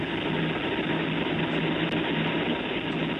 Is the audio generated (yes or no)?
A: no